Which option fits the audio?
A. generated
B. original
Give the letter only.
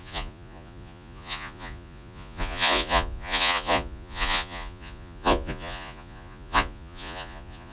A